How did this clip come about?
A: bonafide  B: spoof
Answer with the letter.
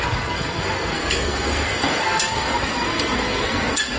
B